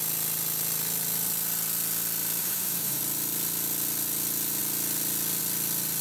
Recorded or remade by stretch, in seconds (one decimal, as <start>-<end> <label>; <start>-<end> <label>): 0.0-2.4 recorded; 2.4-3.0 remade; 3.0-6.0 recorded